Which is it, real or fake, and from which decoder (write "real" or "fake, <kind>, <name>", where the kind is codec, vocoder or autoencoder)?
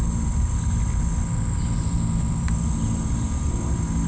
real